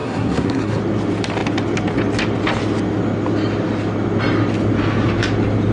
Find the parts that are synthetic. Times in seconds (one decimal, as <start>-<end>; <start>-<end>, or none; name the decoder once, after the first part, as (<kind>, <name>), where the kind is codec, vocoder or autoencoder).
0.0-0.8 (codec, SNAC)